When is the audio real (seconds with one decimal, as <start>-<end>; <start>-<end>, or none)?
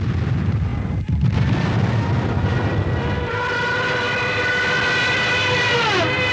0.0-0.7; 4.5-6.3